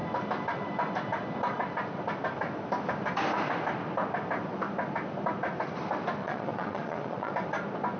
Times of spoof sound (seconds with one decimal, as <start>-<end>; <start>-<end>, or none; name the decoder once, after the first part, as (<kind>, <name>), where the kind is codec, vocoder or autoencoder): 6.2-7.3 (vocoder, Vocos)